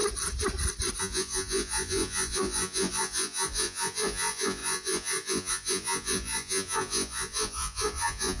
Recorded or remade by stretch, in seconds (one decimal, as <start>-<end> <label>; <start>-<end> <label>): 0.0-1.0 recorded; 1.0-8.4 remade